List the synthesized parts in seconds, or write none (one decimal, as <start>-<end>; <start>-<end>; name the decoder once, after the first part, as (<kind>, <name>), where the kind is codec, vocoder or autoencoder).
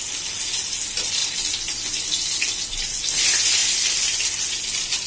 none